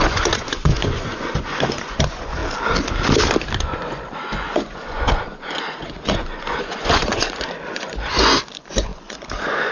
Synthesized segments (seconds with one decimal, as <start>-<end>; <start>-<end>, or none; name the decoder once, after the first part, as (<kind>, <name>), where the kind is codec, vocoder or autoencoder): 0.0-2.4 (vocoder, Vocos); 3.6-9.7